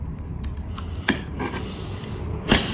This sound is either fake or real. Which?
fake